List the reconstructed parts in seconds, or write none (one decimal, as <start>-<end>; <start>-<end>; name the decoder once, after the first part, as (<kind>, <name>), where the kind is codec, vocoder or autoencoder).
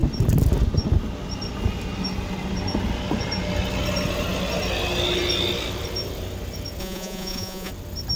6.8-7.7 (vocoder, Vocos)